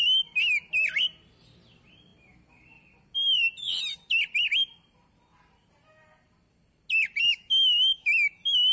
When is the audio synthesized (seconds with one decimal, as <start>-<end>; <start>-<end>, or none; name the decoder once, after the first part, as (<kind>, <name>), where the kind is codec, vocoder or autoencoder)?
7.3-8.1 (autoencoder, DAC-VAE)